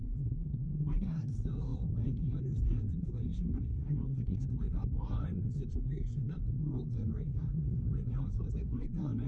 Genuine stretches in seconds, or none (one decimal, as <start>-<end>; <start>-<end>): none